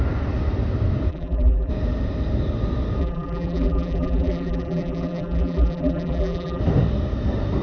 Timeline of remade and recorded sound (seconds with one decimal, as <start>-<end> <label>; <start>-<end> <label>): 0.0-1.1 recorded; 1.1-1.7 remade; 1.7-3.0 recorded; 3.0-6.6 remade; 6.6-7.6 recorded